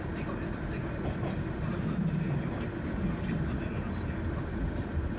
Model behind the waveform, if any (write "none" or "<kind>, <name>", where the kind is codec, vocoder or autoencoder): vocoder, BigVGAN v2